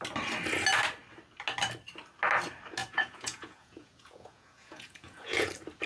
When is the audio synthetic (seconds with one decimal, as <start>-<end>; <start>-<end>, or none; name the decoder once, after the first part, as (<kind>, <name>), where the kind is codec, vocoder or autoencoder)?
2.8-5.5 (vocoder, Vocos)